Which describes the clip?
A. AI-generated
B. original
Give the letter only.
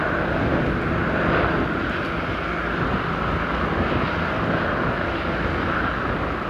B